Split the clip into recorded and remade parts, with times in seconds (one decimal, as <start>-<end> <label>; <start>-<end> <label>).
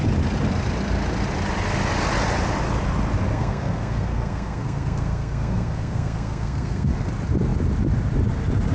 0.0-3.3 recorded; 3.3-7.1 remade; 7.1-8.7 recorded